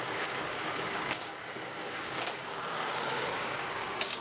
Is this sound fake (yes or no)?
yes